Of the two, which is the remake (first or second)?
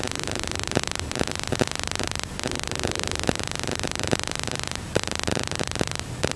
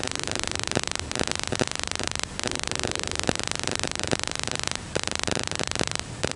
second